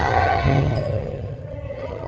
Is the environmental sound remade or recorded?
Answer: remade